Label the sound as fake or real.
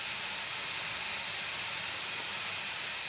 real